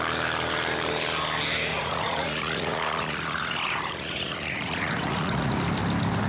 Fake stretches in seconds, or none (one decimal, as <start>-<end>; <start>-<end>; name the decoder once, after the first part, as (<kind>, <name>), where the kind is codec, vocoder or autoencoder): 1.7-5.5 (vocoder, Vocos)